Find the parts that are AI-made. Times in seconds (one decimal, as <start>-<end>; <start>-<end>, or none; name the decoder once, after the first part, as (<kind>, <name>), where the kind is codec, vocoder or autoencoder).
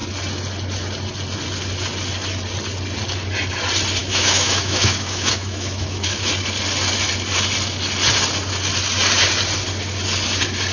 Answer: 4.0-6.3 (autoencoder, DAC-VAE)